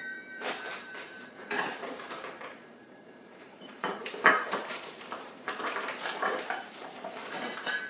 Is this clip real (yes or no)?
no